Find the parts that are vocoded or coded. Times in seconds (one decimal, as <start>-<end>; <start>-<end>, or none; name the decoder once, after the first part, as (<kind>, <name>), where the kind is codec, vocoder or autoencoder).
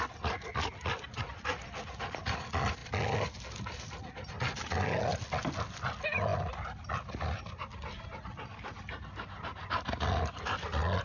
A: none